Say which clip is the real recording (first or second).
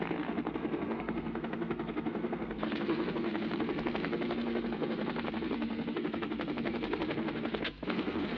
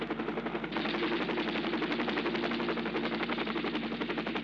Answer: second